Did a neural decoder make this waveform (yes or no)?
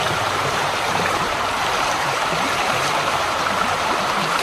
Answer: yes